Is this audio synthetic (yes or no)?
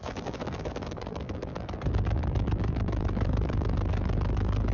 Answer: yes